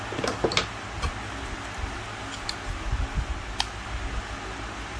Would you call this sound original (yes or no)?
yes